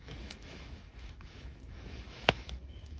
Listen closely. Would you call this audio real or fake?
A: fake